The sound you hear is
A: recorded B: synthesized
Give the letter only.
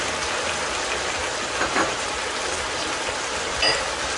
A